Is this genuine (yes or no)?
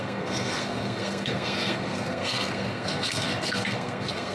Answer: no